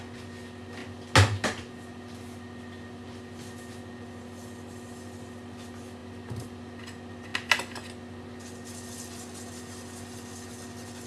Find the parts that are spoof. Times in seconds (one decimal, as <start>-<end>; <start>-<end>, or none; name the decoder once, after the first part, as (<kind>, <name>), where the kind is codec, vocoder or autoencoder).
none